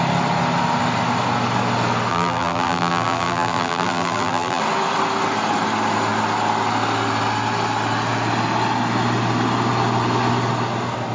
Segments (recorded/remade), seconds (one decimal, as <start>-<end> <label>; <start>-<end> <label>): 0.0-2.1 recorded; 2.1-4.6 remade; 4.6-11.1 recorded